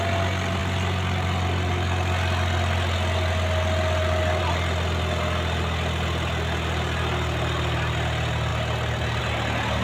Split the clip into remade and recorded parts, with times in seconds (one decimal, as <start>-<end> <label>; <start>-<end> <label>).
0.0-9.8 recorded